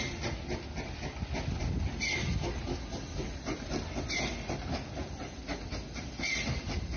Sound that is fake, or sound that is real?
real